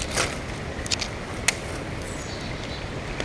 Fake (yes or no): no